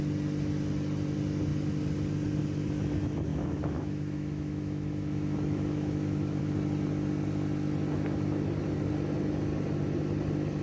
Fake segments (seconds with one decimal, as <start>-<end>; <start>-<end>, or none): 3.3-6.4